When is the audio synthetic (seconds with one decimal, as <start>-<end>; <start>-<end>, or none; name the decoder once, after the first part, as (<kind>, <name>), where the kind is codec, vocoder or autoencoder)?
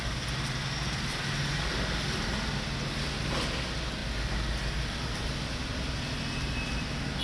none